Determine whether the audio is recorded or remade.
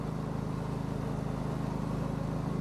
recorded